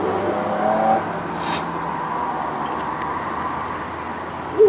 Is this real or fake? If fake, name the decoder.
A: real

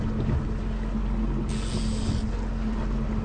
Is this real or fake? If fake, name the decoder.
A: real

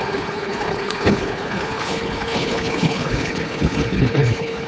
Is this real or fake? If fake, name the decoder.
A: fake, codec, HILCodec